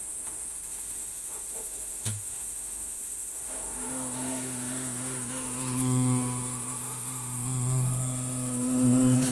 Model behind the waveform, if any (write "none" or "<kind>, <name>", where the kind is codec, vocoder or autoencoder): autoencoder, DAC-VAE